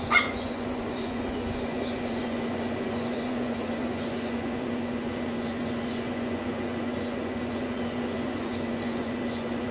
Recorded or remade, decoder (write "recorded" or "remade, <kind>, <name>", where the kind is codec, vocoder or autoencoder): remade, vocoder, Vocos